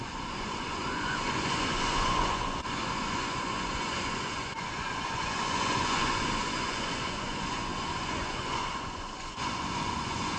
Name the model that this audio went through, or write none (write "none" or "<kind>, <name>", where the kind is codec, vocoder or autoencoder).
vocoder, Vocos